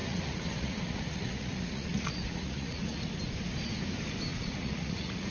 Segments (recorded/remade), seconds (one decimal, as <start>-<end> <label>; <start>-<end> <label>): 0.0-3.0 remade; 3.0-4.3 recorded; 4.3-5.3 remade